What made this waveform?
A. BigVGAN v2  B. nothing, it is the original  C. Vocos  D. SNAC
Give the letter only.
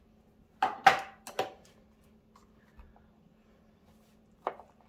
B